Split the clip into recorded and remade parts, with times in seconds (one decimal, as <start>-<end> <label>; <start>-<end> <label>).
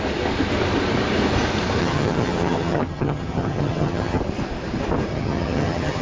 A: 0.0-1.8 recorded; 1.8-4.2 remade; 4.2-5.1 recorded; 5.1-6.0 remade